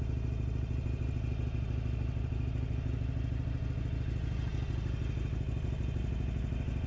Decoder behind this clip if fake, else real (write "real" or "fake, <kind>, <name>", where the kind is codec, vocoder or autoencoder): real